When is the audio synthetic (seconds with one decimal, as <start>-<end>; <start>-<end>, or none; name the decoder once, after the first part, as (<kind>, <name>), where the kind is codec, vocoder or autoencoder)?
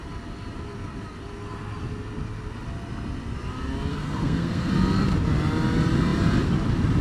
3.9-4.7 (codec, SNAC)